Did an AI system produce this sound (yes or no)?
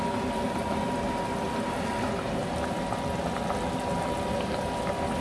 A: no